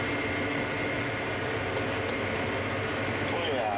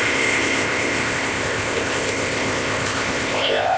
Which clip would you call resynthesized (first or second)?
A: second